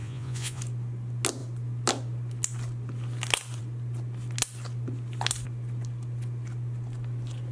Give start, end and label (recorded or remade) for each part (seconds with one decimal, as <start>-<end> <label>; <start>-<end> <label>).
0.0-0.6 remade; 0.6-7.5 recorded